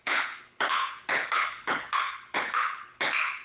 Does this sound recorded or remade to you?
remade